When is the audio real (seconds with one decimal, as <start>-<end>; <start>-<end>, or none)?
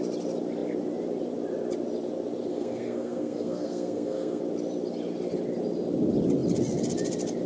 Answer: 0.0-2.5; 4.4-7.5